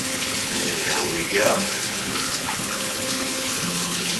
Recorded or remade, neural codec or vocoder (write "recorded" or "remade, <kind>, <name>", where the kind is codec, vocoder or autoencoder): remade, codec, HILCodec